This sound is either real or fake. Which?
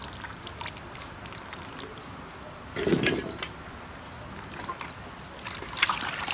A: real